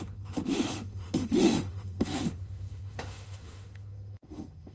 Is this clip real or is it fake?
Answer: fake